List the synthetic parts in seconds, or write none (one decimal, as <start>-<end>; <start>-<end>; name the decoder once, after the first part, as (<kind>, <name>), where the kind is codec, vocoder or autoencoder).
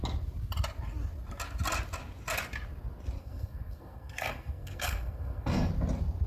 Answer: 3.2-5.7 (codec, SNAC)